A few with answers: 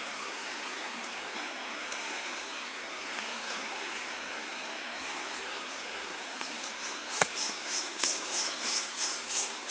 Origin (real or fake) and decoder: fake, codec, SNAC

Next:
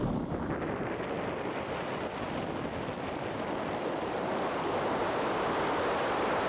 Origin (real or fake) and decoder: fake, vocoder, BigVGAN v2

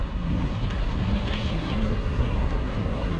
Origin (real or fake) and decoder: fake, codec, SNAC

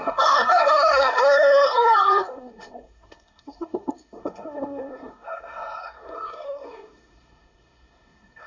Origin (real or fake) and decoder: fake, codec, SNAC